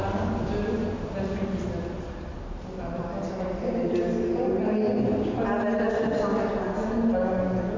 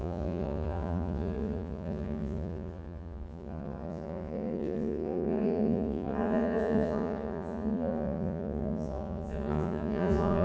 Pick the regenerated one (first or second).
second